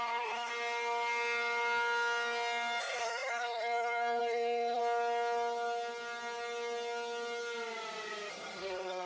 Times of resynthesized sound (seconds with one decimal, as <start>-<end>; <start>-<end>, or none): 0.0-0.5; 2.8-4.8; 8.3-9.1